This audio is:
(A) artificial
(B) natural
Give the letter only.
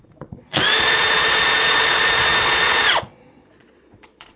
A